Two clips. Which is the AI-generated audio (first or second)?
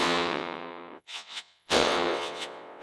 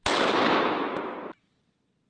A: first